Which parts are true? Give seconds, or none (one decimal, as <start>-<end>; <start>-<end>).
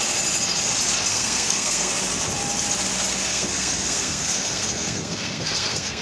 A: 0.0-1.1; 1.9-3.3